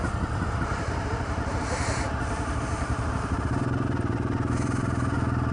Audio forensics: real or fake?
real